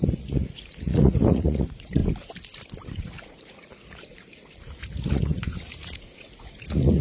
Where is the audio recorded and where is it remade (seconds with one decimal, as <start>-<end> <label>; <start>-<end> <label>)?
0.0-2.0 remade; 2.0-2.9 recorded; 2.9-7.0 remade

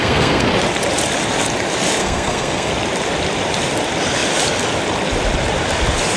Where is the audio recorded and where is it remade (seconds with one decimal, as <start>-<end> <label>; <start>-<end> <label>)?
0.0-0.5 remade; 0.5-2.0 recorded; 2.0-2.7 remade; 2.7-6.2 recorded

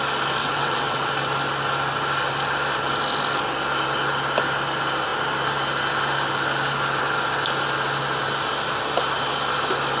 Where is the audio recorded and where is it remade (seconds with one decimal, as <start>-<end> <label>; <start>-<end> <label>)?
0.0-0.4 recorded; 0.4-1.1 remade; 1.1-10.0 recorded

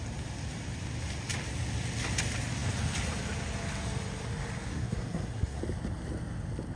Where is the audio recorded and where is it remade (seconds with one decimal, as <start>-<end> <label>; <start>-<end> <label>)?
0.0-4.7 recorded; 4.7-5.6 remade; 5.6-6.8 recorded